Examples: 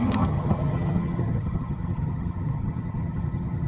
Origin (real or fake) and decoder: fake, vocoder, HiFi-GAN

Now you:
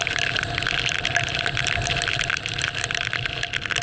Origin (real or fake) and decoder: real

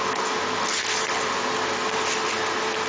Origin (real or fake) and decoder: real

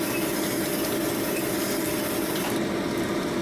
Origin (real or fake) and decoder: real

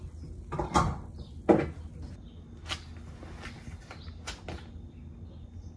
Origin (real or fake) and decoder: real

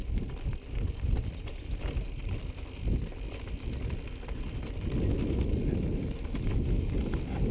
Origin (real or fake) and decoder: real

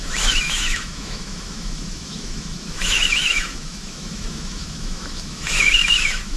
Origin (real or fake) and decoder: fake, autoencoder, DAC-VAE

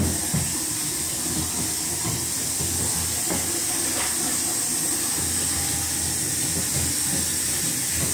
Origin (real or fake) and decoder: real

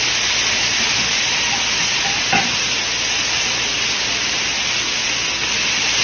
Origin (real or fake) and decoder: real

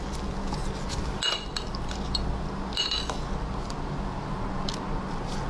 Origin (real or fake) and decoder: real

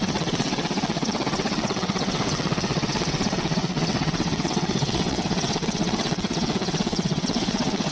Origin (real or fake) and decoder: fake, vocoder, WaveNeXt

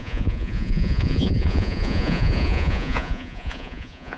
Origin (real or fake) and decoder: fake, vocoder, Vocos